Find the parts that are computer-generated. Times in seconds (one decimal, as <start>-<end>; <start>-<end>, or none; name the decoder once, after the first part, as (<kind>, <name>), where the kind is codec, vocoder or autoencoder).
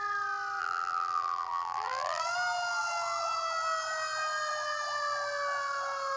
0.6-2.2 (vocoder, BigVGAN v2)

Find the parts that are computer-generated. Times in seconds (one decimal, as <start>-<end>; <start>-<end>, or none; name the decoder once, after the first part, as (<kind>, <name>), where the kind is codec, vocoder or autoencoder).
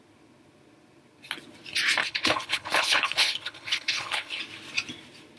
2.0-4.4 (codec, HILCodec)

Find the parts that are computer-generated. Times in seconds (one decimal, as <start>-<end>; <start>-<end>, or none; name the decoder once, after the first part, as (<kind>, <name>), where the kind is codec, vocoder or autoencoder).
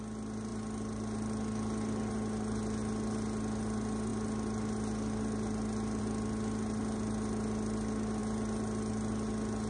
none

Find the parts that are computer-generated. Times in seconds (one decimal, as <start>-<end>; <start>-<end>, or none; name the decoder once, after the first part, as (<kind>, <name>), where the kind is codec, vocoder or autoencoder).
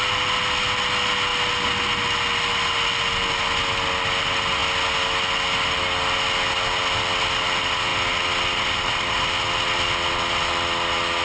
none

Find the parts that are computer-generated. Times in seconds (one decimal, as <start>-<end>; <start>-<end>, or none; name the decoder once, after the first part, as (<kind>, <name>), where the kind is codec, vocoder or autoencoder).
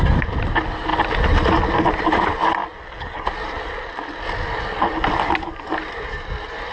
none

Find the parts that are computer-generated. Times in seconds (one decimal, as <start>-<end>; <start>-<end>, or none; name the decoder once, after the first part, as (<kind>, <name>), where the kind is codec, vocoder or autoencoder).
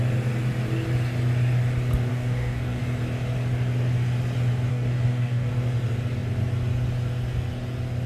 2.1-2.8 (codec, DAC); 4.7-5.5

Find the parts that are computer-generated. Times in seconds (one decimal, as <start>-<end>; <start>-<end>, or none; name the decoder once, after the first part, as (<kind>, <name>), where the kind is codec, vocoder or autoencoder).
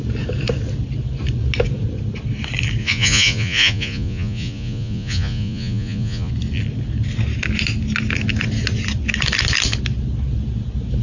2.8-6.3 (vocoder, Vocos)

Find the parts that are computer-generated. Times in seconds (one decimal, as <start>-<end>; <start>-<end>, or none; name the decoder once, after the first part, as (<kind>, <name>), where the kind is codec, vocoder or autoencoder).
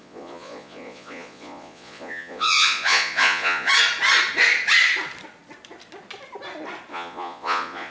0.0-3.7 (vocoder, Vocos); 6.9-7.9